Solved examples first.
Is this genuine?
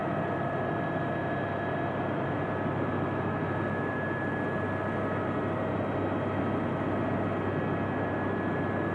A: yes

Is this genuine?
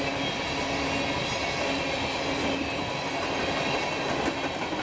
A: yes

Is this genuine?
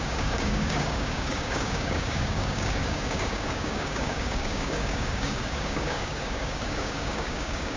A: no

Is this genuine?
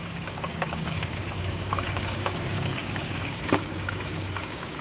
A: no